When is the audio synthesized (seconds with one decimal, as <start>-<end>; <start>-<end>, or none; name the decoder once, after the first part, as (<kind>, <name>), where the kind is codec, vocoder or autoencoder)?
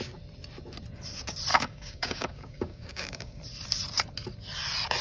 1.5-3.4 (codec, DAC)